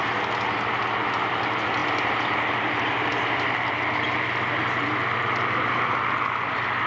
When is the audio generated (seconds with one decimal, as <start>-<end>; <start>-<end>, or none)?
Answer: none